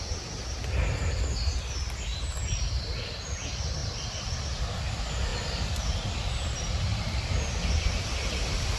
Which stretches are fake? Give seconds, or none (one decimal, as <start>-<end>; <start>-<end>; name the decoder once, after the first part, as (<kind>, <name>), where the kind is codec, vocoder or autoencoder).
none